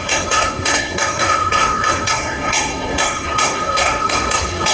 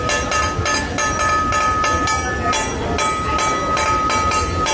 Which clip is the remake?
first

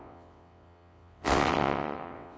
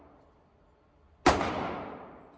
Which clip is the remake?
first